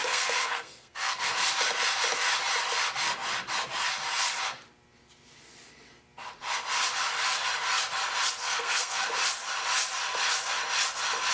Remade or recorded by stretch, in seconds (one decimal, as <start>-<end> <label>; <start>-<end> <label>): 0.0-1.3 remade; 1.3-8.4 recorded; 8.4-9.1 remade; 9.1-11.3 recorded